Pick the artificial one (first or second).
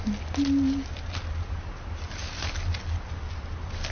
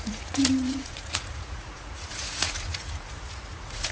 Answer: second